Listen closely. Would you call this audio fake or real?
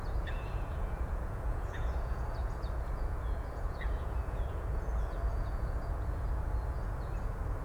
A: fake